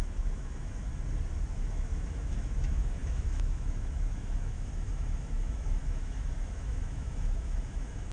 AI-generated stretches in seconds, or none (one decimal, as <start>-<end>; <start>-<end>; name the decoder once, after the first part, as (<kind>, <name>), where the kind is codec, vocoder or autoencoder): 0.0-0.9 (autoencoder, DAC-VAE); 1.5-8.1